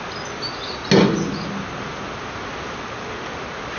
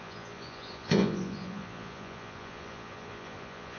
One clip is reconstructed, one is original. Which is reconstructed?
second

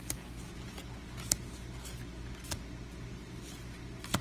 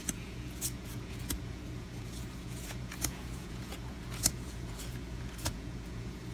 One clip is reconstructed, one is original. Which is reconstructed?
second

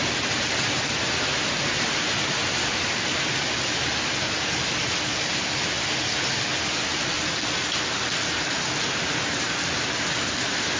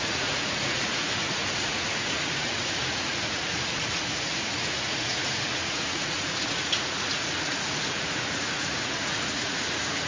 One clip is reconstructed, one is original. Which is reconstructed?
second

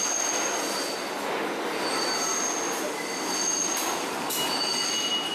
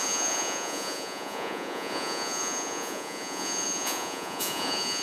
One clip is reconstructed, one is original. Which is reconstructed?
second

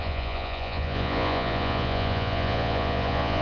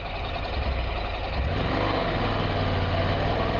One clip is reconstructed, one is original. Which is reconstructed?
first